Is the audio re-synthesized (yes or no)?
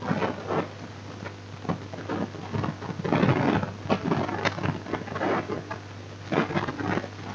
no